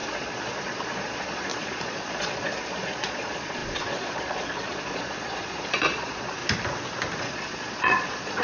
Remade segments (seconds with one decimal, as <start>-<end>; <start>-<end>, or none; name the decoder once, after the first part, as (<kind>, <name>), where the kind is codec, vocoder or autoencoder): 0.0-6.4 (vocoder, Vocos); 7.2-8.4